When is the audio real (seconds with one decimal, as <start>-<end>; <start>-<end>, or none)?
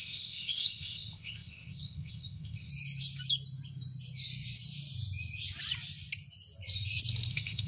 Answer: 2.7-7.3